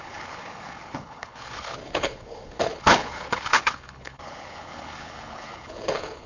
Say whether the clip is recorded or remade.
remade